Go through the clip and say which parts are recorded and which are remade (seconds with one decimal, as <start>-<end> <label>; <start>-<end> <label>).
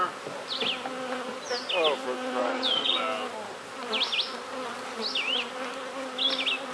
0.0-2.4 recorded; 2.4-3.0 remade; 3.0-6.7 recorded